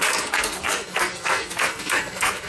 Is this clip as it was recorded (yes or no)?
no